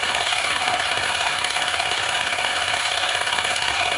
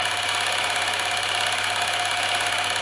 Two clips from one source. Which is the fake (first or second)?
first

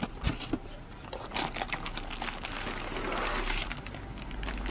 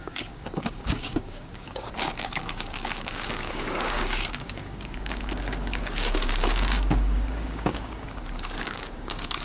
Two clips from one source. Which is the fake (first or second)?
second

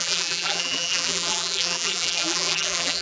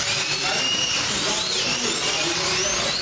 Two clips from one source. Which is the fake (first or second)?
first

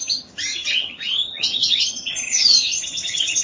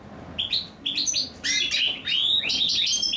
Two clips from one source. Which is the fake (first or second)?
first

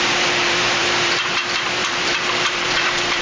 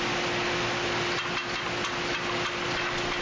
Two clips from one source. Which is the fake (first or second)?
first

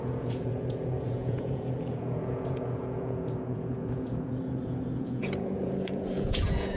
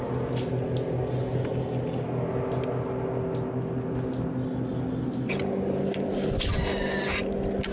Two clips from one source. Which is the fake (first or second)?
first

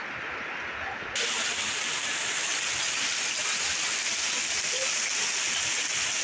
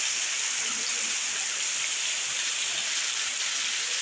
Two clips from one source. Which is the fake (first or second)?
second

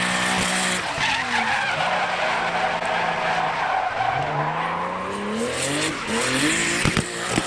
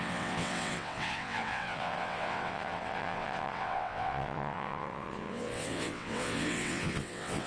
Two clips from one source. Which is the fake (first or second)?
second